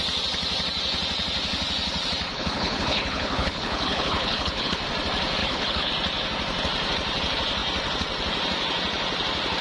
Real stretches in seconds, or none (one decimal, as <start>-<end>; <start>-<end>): 0.0-2.3; 4.8-5.4; 5.9-9.6